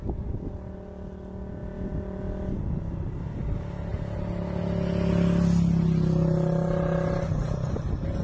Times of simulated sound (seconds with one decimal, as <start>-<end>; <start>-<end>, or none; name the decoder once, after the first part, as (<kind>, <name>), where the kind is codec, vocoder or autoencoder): none